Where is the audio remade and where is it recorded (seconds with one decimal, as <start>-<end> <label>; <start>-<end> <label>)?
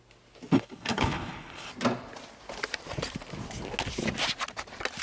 0.0-0.5 recorded; 0.5-1.7 remade; 1.7-5.0 recorded